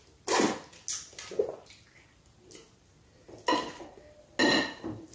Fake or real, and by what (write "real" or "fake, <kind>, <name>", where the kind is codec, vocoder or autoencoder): real